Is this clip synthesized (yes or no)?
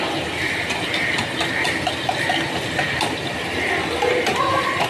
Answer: yes